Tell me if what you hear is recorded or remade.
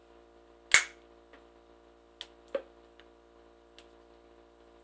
recorded